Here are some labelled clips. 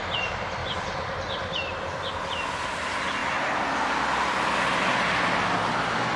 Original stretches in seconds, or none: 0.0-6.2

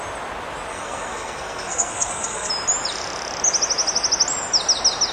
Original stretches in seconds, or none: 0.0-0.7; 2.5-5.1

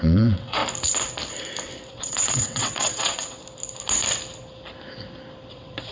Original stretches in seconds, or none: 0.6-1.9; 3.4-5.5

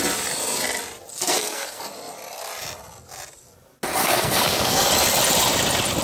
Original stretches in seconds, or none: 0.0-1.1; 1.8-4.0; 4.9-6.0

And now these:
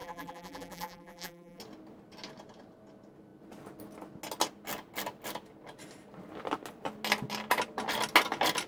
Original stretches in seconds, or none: 1.6-8.7